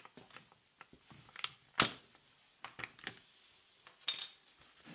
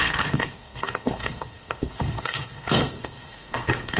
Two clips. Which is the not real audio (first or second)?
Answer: second